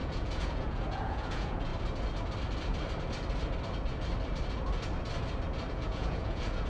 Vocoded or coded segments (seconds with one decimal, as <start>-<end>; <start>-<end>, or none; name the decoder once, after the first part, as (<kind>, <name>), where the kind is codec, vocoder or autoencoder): 0.0-1.7 (vocoder, Vocos); 5.7-6.7

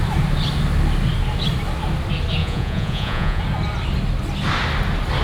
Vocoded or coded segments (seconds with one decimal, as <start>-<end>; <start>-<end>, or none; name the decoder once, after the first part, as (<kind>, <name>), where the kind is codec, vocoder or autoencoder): 2.4-3.4 (vocoder, Vocos)

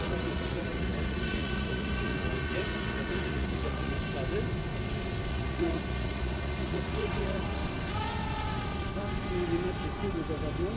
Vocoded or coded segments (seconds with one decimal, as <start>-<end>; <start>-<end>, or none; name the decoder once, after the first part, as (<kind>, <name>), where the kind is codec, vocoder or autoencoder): 0.0-4.0 (vocoder, Vocos); 5.3-7.6

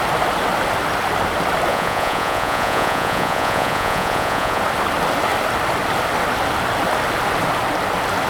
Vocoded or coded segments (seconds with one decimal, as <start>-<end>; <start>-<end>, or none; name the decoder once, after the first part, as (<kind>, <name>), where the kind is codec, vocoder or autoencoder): 1.7-4.6 (vocoder, Vocos)

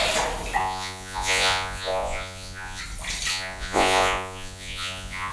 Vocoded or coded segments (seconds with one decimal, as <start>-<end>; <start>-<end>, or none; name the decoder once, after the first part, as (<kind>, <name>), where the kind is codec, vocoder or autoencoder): 0.6-2.8 (vocoder, Vocos); 3.3-5.3

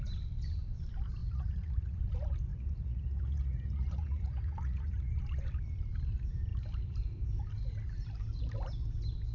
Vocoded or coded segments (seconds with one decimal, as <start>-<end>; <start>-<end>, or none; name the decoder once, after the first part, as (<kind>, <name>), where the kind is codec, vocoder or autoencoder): 1.2-2.0 (vocoder, Vocos); 2.5-5.1